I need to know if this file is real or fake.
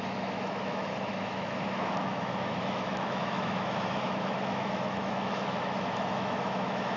fake